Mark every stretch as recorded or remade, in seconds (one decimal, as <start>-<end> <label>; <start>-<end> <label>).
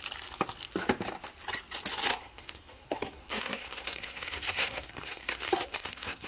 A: 0.0-2.1 recorded; 2.1-6.3 remade